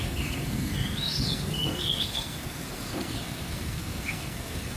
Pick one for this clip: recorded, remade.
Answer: remade